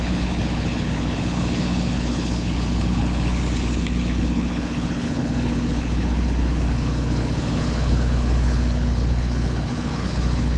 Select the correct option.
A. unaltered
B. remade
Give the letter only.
B